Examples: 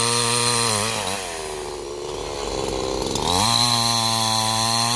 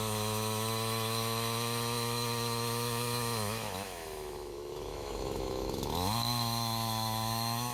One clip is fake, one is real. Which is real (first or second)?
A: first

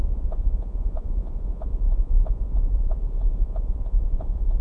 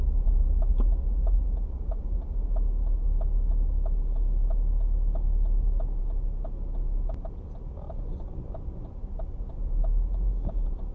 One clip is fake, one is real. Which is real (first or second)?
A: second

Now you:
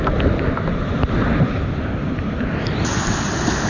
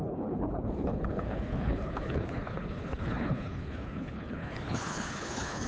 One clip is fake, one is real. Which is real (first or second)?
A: first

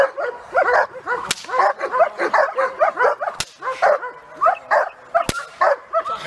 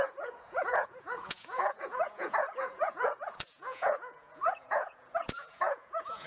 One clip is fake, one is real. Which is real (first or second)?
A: first